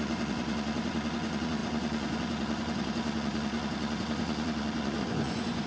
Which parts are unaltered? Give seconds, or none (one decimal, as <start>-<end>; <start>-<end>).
none